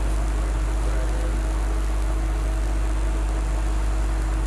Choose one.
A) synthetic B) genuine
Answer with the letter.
B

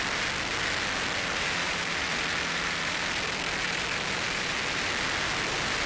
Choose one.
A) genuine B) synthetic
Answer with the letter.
B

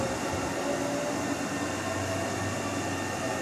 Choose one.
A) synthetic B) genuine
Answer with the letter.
B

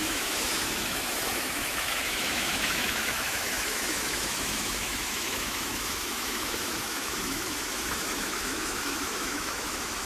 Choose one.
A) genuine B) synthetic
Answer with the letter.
B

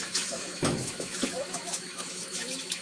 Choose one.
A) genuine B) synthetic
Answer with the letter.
B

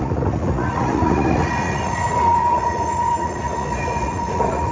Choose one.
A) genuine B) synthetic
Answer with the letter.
B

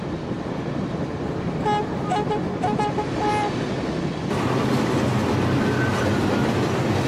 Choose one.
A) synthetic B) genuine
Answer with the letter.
B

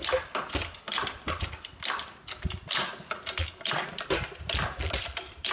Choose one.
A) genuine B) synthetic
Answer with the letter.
A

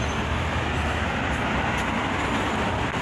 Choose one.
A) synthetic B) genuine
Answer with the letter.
B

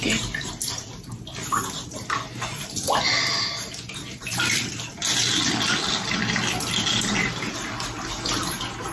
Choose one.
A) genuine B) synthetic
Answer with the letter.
A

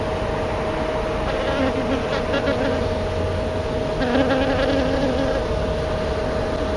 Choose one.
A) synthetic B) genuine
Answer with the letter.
B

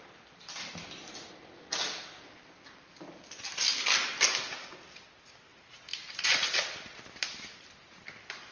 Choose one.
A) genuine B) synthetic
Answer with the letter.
A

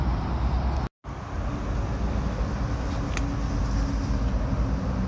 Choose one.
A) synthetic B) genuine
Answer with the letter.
B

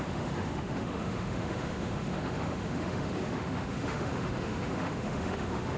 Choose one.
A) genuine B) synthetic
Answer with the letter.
B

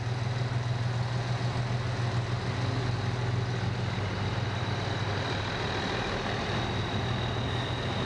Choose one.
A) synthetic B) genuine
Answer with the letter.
B